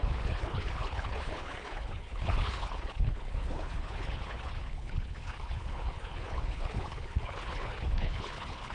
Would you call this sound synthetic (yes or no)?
yes